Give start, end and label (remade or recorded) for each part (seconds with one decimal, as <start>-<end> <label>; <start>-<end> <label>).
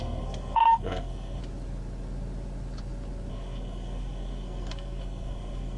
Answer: 0.0-1.4 remade; 1.4-3.3 recorded; 3.3-5.8 remade